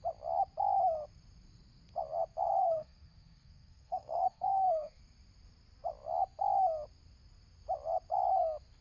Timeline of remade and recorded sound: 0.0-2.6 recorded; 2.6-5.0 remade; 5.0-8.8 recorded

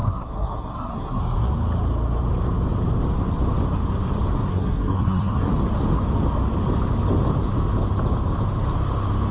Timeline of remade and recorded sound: 0.0-1.2 remade; 1.2-4.5 recorded; 4.5-5.5 remade; 5.5-9.3 recorded